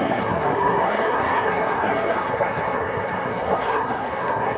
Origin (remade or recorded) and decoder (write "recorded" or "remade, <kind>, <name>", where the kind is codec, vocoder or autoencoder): remade, codec, SNAC